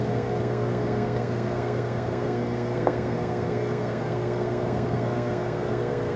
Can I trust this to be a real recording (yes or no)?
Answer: no